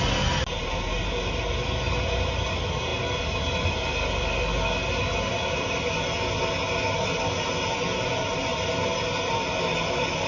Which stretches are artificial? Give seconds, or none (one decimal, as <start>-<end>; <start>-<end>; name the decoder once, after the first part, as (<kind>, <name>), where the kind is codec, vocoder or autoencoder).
none

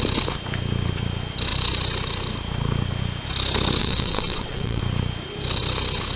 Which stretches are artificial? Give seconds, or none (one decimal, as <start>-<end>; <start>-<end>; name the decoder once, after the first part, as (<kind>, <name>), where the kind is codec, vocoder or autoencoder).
3.8-4.8 (vocoder, WaveNeXt)

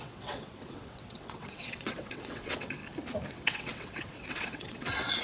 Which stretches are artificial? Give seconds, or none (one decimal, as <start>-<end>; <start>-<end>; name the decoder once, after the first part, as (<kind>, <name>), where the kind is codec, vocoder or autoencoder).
0.0-2.8 (vocoder, WaveNeXt); 3.3-5.2

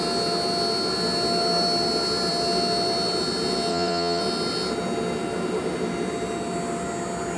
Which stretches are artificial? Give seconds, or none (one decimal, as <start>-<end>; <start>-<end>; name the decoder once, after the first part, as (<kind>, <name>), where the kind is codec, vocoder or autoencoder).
3.7-4.2 (vocoder, WaveNeXt)

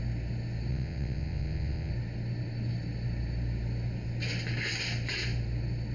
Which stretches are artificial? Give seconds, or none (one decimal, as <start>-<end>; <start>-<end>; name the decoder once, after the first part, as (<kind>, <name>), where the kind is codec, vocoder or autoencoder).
0.7-1.9 (vocoder, WaveNeXt)

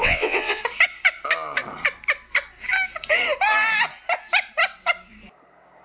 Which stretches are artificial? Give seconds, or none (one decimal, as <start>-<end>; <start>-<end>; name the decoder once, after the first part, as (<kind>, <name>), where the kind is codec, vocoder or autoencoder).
0.0-0.6 (vocoder, WaveNeXt)

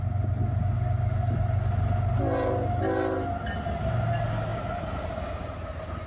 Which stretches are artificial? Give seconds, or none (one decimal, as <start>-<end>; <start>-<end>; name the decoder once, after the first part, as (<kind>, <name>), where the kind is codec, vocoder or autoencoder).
none